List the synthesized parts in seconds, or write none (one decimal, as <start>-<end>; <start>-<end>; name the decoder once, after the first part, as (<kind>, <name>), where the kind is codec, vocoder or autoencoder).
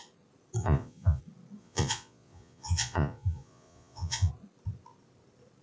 0.6-1.2 (vocoder, Vocos); 1.6-4.3